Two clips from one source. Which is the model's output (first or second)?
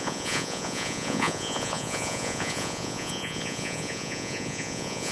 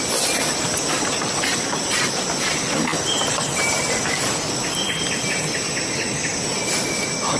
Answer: first